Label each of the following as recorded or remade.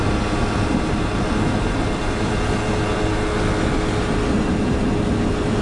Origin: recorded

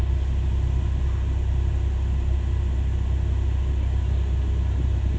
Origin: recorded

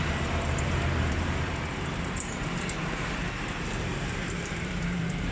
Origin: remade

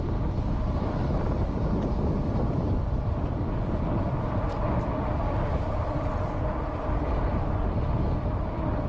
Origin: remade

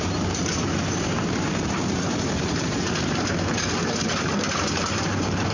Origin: remade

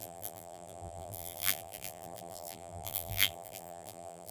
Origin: remade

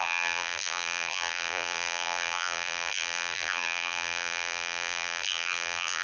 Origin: remade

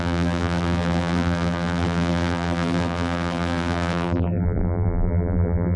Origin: remade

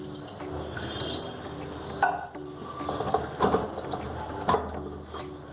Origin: recorded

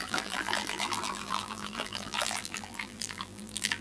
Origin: remade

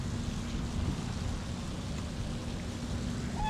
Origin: recorded